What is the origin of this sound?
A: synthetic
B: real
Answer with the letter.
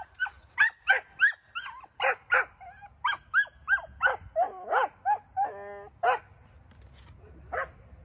B